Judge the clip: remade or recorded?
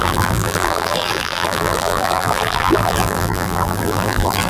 remade